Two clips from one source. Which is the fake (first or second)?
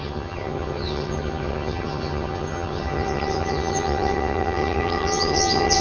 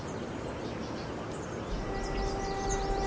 first